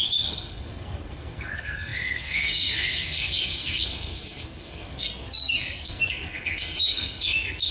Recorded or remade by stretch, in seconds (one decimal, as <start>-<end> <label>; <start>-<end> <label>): 0.0-7.7 remade